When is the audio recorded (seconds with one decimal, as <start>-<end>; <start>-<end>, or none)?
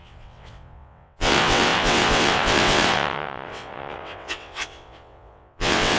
none